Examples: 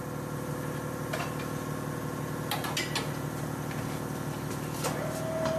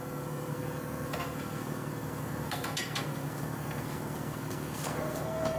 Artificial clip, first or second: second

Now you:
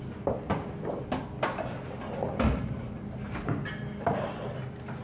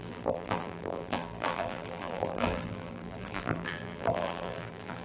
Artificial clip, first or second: second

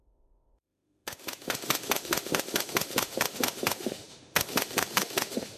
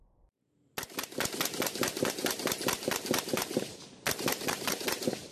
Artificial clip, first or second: first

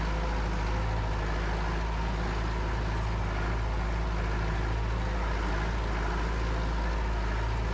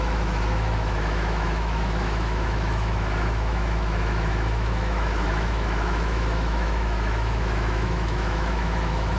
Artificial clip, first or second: second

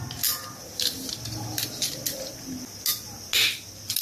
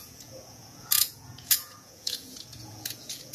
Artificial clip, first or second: second